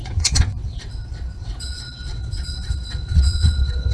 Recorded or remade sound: remade